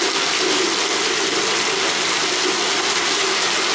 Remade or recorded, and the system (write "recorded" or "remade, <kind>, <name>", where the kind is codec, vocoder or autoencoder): recorded